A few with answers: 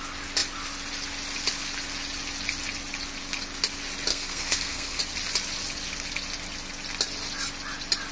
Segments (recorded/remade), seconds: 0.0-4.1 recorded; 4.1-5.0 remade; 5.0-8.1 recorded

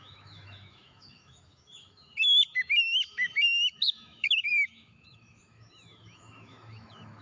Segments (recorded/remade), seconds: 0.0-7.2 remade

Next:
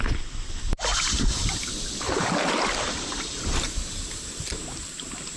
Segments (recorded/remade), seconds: 0.0-0.9 remade; 0.9-4.1 recorded; 4.1-5.4 remade

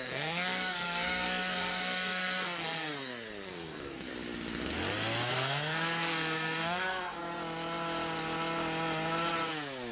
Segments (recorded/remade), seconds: 0.0-4.1 remade; 4.1-5.3 recorded; 5.3-7.2 remade; 7.2-9.9 recorded

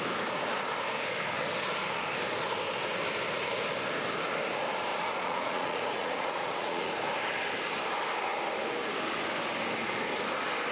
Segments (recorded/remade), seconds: 0.0-4.9 recorded; 4.9-6.9 remade; 6.9-10.7 recorded

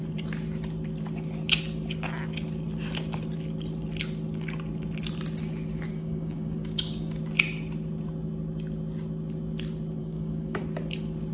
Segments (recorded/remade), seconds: 0.0-5.9 recorded; 5.9-7.2 remade; 7.2-10.0 recorded; 10.0-10.6 remade; 10.6-11.3 recorded